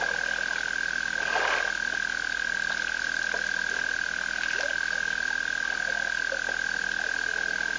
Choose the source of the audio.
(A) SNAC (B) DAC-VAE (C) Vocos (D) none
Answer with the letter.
D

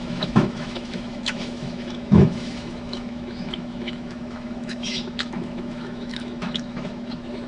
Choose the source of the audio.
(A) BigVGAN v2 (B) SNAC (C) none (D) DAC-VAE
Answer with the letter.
D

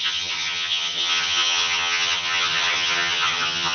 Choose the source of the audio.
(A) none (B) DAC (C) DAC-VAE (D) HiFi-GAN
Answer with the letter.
D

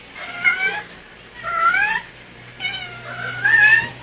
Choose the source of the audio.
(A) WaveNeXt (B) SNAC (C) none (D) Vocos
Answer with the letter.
C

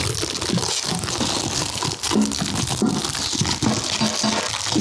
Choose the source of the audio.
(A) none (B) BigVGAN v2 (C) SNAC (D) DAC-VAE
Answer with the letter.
A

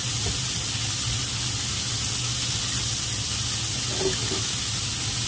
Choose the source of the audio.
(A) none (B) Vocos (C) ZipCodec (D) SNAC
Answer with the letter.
A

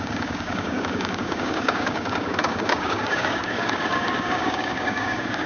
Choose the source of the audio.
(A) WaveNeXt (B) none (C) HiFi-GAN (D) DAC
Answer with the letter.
D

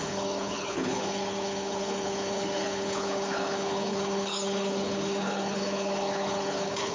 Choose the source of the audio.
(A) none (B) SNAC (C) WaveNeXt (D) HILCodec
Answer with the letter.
D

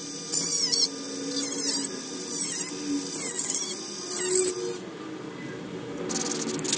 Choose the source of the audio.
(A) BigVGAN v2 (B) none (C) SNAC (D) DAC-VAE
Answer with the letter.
B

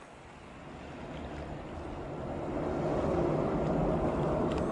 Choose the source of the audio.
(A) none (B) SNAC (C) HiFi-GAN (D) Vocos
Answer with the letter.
A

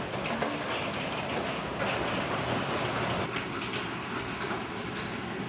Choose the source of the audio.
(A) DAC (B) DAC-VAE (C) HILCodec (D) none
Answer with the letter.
D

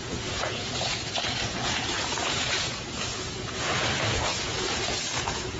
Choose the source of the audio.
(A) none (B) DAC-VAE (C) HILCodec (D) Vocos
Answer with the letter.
D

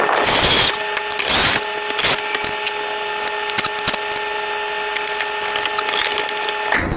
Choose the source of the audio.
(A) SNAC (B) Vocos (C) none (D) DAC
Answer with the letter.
C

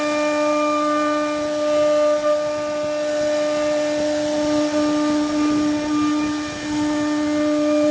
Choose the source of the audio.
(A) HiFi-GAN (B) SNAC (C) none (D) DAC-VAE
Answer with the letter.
C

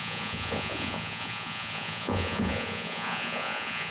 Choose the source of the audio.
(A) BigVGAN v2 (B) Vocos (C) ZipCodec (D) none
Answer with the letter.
B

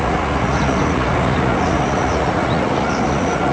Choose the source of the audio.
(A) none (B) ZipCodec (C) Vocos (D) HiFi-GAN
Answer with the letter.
C